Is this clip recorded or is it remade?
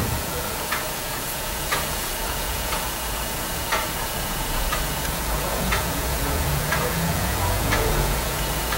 remade